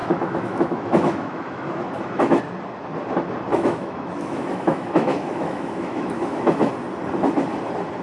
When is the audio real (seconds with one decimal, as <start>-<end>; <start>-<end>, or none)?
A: 2.4-3.5; 6.7-8.0